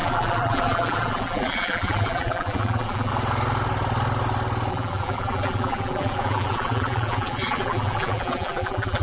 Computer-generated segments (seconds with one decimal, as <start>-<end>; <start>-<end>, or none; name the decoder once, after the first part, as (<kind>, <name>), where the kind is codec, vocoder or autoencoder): 0.0-3.1 (vocoder, BigVGAN v2); 4.7-9.0